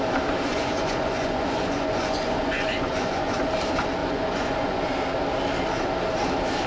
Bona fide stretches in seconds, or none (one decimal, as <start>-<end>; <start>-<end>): 0.0-0.5; 3.4-4.0; 4.8-6.7